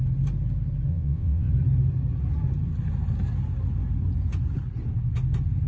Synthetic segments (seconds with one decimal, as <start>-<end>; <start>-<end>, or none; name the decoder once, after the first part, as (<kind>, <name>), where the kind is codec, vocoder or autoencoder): 0.9-1.5 (vocoder, WaveNeXt)